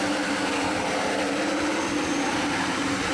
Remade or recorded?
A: recorded